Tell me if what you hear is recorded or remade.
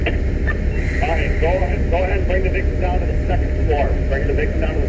recorded